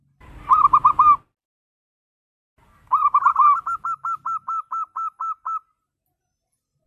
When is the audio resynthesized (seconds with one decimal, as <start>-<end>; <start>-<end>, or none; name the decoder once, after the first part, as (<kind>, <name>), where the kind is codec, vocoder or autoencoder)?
none